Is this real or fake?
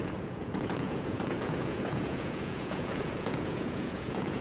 fake